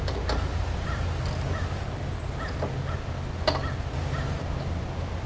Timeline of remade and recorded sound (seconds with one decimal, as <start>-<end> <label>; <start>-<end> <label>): 0.0-5.3 recorded